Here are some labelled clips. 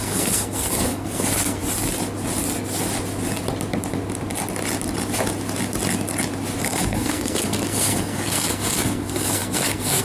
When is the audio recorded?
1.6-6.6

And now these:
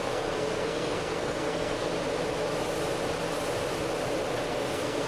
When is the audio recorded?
1.9-4.5